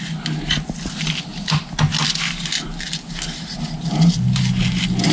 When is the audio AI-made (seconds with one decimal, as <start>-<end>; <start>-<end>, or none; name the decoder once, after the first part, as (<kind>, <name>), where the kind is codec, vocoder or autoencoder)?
none